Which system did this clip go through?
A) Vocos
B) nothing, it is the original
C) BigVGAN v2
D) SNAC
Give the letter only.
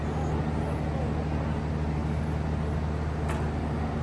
B